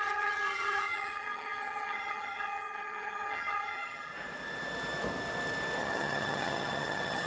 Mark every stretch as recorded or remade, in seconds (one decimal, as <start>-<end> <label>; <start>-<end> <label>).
0.0-4.1 remade; 4.1-5.8 recorded; 5.8-7.3 remade